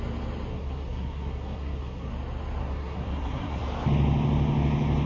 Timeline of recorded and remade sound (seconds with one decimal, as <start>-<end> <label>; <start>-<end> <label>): 0.0-0.5 recorded; 0.5-2.1 remade; 2.1-2.6 recorded; 2.6-3.6 remade; 3.6-5.1 recorded